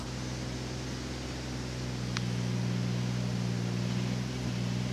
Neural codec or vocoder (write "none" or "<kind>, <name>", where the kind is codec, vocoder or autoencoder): none